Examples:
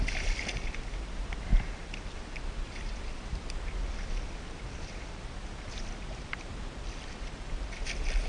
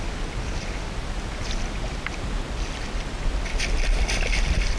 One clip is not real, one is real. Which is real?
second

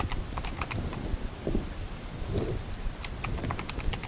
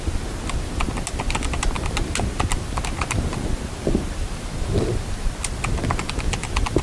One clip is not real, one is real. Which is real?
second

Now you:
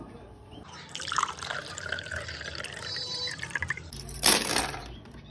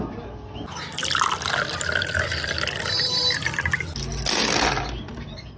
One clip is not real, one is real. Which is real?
second